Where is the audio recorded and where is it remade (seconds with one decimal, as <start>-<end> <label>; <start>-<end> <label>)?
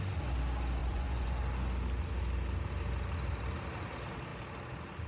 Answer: 0.0-0.8 recorded; 0.8-1.4 remade; 1.4-5.1 recorded